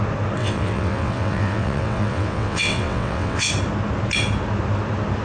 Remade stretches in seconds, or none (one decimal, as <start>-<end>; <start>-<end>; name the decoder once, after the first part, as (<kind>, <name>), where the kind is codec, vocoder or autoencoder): 0.4-3.5 (vocoder, WaveNeXt)